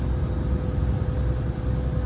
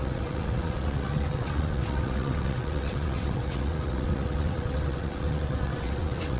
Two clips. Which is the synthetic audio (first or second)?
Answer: second